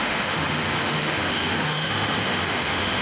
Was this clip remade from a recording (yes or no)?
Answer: yes